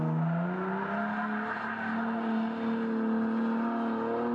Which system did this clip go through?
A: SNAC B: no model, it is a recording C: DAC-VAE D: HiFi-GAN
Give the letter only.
B